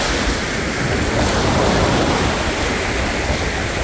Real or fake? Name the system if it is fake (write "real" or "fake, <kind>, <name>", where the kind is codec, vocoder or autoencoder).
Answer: real